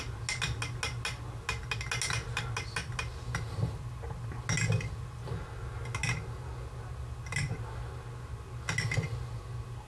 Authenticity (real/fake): real